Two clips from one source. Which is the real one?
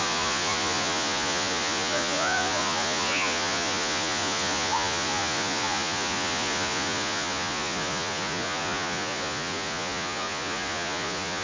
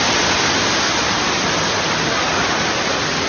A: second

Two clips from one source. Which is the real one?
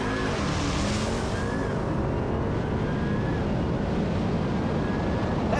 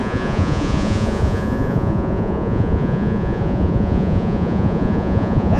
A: first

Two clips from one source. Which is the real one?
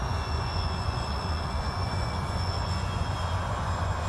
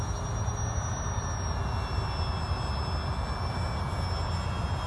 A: second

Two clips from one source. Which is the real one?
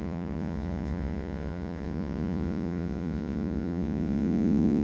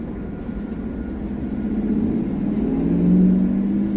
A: second